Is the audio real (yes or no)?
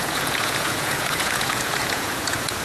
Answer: no